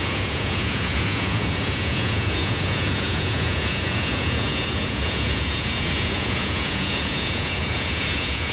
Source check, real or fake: fake